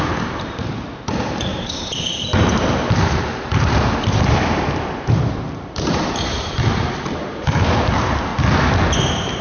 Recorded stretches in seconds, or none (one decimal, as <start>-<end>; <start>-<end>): 8.3-9.0